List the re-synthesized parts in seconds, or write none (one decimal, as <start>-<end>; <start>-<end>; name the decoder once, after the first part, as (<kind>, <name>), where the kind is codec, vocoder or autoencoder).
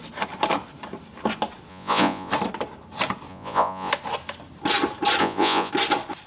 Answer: 1.7-2.3 (vocoder, Vocos); 3.3-3.9; 5.2-5.7